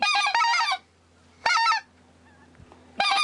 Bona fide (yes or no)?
yes